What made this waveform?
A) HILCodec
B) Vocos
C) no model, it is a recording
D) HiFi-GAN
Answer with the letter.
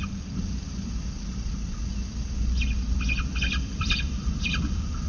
C